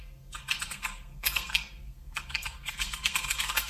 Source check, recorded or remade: remade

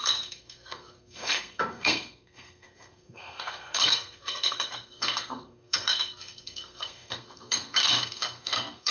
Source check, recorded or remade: remade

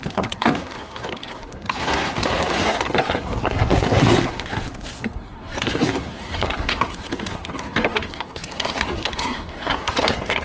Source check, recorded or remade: remade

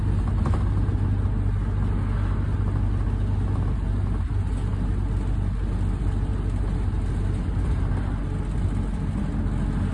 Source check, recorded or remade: recorded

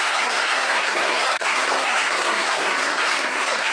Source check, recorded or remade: remade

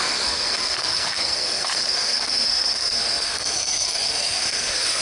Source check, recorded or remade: remade